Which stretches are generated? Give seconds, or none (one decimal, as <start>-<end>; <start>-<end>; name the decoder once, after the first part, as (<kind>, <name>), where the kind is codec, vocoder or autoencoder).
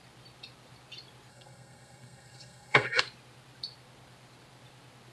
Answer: 1.3-3.0 (codec, SNAC)